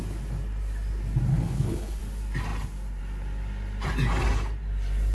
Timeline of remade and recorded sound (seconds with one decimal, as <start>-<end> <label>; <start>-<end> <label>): 0.0-1.3 recorded; 1.3-2.0 remade; 2.0-5.1 recorded